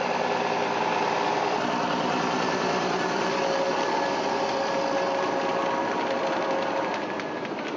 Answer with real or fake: fake